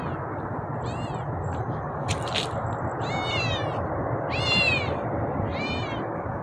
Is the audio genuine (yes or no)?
yes